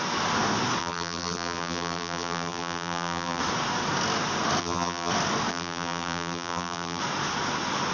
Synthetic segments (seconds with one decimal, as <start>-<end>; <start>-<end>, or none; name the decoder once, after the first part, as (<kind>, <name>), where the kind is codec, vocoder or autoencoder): 0.8-3.4 (vocoder, BigVGAN v2); 4.6-5.1; 5.5-7.0